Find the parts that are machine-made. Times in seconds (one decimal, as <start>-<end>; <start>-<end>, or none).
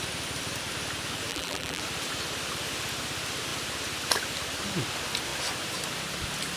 1.3-1.8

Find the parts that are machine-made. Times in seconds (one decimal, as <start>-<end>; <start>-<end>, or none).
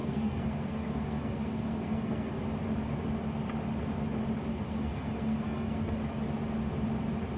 0.0-2.4; 4.5-6.0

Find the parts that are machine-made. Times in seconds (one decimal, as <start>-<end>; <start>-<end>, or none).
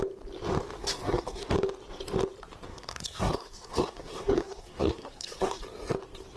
0.8-1.5; 2.7-5.6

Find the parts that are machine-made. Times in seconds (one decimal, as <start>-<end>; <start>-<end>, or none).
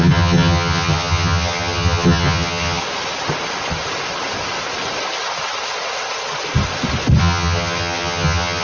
0.0-2.8; 7.2-8.6